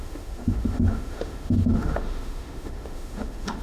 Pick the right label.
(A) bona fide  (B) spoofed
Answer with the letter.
B